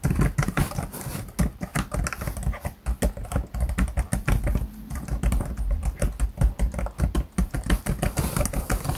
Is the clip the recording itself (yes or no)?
yes